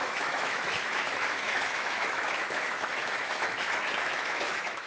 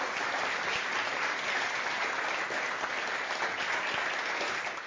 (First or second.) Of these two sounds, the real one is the second